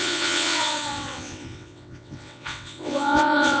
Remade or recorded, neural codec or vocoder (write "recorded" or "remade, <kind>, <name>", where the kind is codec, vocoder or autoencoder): remade, vocoder, WaveNeXt